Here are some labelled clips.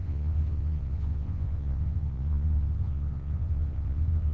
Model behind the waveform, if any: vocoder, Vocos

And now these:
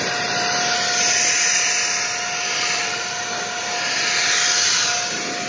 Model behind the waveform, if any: none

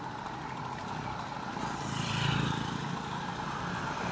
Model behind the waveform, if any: none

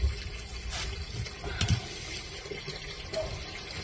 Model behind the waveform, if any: none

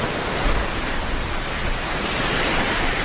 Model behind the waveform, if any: none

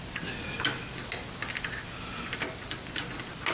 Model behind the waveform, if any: none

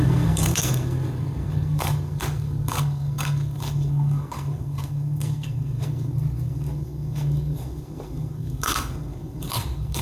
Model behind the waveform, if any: codec, SNAC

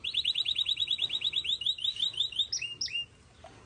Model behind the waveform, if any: none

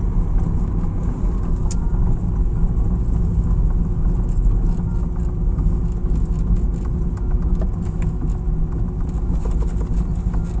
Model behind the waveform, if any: none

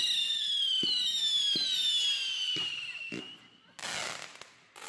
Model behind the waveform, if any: none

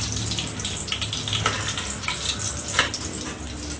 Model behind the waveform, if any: none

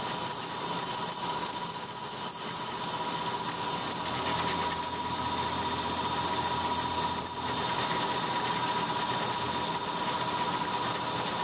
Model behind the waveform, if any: none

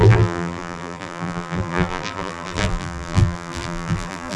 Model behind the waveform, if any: vocoder, BigVGAN v2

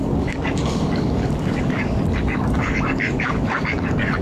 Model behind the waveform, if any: codec, DAC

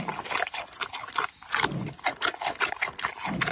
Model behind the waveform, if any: none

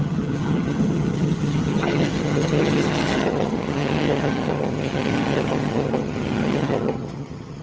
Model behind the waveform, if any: vocoder, HiFi-GAN